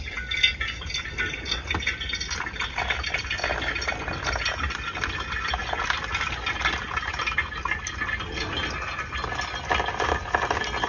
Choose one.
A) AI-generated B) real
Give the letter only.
B